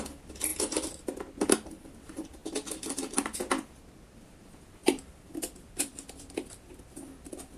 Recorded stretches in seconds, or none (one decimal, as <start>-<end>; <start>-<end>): 0.0-4.8